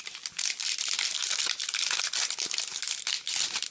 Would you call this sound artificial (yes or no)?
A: no